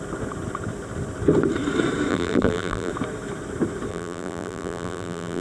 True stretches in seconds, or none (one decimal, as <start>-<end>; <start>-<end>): 0.0-2.1; 2.9-3.9

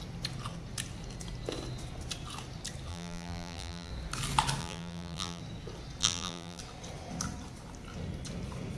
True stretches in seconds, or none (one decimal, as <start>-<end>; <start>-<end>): 0.0-2.9; 3.9-4.6; 5.4-6.0; 6.6-8.8

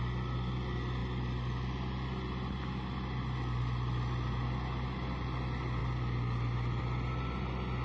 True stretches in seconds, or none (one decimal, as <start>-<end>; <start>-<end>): 0.0-5.8; 6.8-7.8

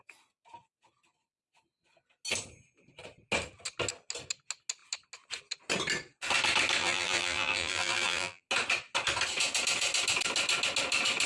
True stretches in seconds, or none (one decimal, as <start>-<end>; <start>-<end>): 0.0-6.8; 8.4-11.3

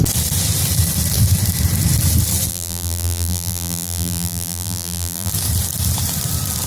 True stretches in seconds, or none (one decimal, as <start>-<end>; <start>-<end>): 0.0-2.5; 5.3-6.7

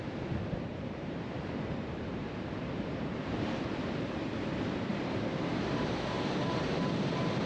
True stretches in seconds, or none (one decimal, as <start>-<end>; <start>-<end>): 0.0-0.7; 4.0-4.9